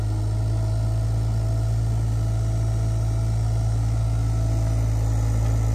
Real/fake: real